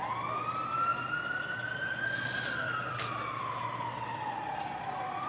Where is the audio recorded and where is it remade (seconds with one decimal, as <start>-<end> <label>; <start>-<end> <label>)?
0.0-5.3 recorded